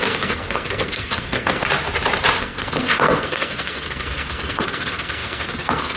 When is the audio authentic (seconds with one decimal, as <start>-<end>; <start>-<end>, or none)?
1.6-2.4